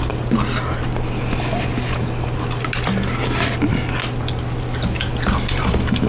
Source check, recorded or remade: recorded